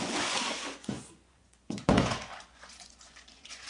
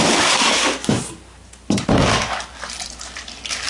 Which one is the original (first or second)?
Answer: second